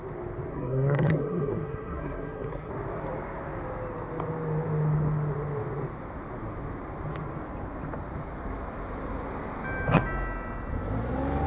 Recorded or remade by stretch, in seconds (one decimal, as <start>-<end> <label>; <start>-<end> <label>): 0.0-0.5 recorded; 0.5-2.7 remade; 2.7-11.5 recorded